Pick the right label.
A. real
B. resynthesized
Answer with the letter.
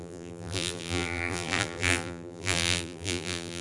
B